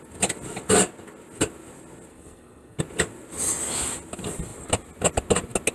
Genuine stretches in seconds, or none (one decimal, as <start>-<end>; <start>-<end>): 0.0-2.1; 2.8-5.7